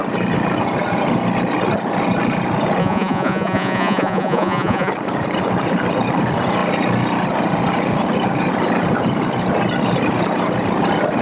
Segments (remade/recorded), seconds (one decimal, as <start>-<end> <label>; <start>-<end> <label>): 0.0-2.8 recorded; 2.8-4.9 remade; 4.9-11.2 recorded